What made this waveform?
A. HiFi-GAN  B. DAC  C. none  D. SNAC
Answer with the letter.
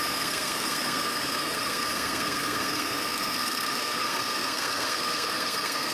D